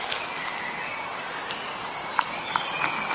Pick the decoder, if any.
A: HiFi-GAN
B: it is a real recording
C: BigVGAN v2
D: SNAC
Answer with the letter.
B